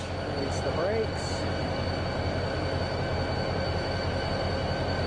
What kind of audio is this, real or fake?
real